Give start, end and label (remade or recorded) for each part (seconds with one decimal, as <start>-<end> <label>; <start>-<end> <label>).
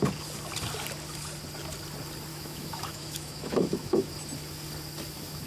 0.0-2.3 recorded; 2.3-4.1 remade; 4.1-5.5 recorded